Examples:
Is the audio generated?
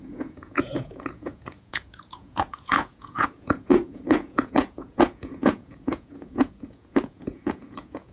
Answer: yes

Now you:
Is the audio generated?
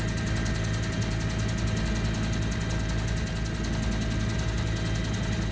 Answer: no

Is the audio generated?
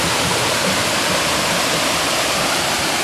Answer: yes